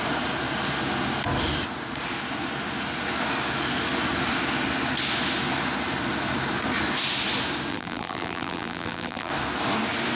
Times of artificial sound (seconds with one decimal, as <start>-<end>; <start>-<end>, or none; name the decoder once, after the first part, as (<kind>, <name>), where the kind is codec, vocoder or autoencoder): 7.7-9.3 (vocoder, BigVGAN v2)